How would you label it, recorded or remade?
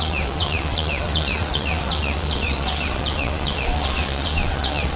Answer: remade